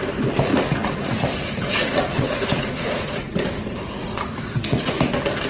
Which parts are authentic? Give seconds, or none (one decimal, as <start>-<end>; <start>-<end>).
0.0-0.5; 3.4-4.0; 5.0-5.5